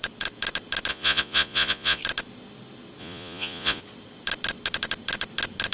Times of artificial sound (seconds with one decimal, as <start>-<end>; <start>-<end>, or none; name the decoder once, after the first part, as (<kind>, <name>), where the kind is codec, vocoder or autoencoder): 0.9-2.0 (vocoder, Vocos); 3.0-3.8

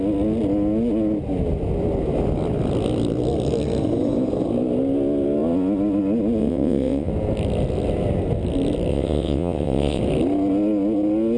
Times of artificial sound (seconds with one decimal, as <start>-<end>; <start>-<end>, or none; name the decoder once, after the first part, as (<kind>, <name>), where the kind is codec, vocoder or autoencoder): 6.4-7.1 (vocoder, WaveNeXt); 8.9-10.0

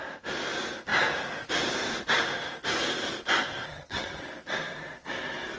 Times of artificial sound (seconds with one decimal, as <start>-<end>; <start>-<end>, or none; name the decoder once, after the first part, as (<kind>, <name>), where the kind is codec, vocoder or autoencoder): 3.7-4.2 (vocoder, HiFi-GAN)